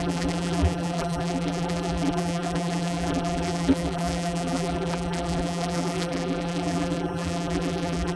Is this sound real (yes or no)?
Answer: no